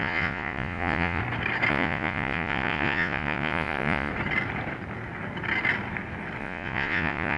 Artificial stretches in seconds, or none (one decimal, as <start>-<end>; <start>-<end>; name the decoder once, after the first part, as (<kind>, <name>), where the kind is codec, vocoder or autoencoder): 0.0-1.2 (vocoder, Vocos); 1.7-4.1; 6.4-7.4